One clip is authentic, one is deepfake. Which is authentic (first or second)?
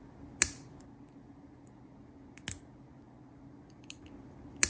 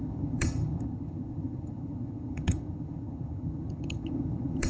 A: first